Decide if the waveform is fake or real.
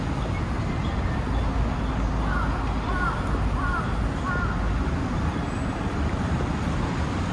real